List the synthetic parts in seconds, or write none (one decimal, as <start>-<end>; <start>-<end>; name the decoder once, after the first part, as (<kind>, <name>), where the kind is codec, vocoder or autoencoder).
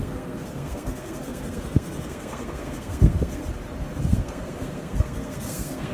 0.0-3.4 (codec, SNAC); 4.0-5.9